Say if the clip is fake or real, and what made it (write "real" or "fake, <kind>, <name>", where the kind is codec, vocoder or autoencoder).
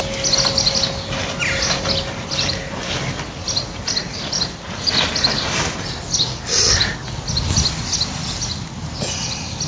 real